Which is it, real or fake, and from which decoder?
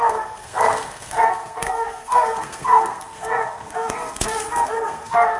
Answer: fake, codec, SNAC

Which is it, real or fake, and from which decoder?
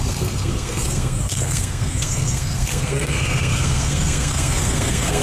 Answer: fake, codec, SNAC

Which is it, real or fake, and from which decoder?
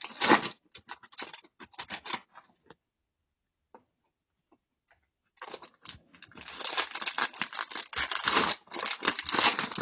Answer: real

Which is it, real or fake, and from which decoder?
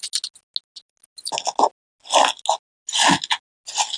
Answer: real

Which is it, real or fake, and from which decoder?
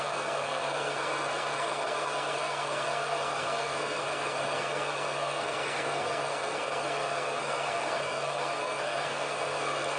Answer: fake, codec, SNAC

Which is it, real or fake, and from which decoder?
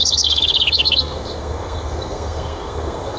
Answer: fake, codec, SNAC